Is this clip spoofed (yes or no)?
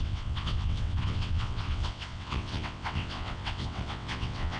yes